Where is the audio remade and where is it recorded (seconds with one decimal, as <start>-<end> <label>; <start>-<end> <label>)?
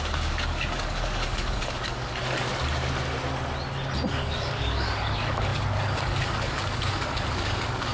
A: 0.0-2.5 remade; 2.5-4.1 recorded; 4.1-7.9 remade